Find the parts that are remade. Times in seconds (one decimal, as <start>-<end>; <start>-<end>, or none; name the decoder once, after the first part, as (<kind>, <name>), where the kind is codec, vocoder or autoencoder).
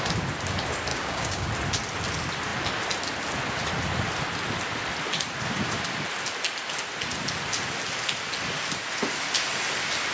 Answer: 0.9-1.5 (codec, DAC)